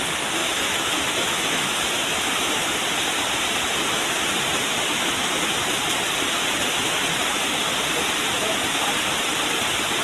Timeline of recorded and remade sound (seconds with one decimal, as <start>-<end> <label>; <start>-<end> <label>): 0.0-0.4 recorded; 0.4-2.1 remade; 2.1-4.5 recorded; 4.5-5.4 remade; 5.4-10.0 recorded